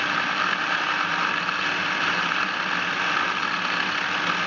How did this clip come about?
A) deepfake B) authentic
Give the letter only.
B